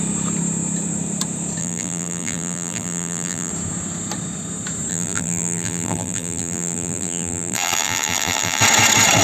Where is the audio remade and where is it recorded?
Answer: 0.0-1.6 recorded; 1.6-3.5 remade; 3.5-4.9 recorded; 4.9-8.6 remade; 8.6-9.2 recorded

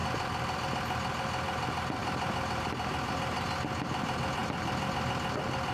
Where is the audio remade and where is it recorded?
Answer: 0.0-0.7 remade; 0.7-2.0 recorded; 2.0-3.1 remade; 3.1-5.7 recorded

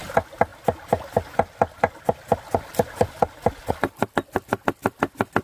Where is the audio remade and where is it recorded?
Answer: 0.0-5.4 recorded

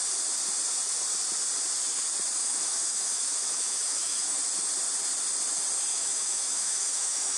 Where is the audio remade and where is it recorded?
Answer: 0.0-2.4 recorded; 2.4-4.4 remade; 4.4-5.9 recorded; 5.9-7.4 remade